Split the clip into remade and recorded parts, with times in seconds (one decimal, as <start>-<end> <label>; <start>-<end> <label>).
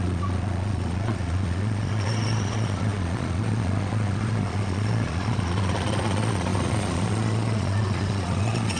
0.0-8.8 remade